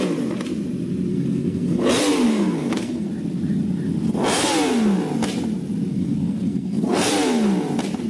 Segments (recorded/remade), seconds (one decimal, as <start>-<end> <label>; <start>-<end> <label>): 0.0-1.1 recorded; 1.1-1.9 remade; 1.9-2.3 recorded; 2.3-3.1 remade; 3.1-5.9 recorded; 5.9-7.1 remade; 7.1-8.1 recorded